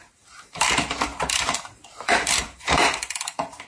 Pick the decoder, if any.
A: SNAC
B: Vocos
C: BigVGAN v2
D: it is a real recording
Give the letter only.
C